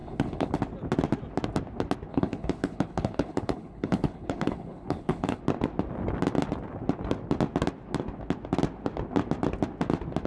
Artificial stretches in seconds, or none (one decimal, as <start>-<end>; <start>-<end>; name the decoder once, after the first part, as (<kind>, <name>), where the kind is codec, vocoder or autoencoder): 0.0-0.6 (codec, HILCodec); 2.1-5.4